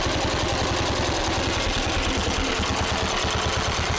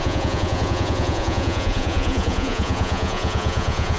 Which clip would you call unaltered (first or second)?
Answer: first